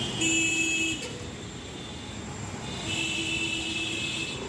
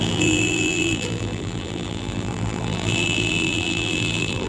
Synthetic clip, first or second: second